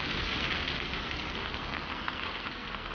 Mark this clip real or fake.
fake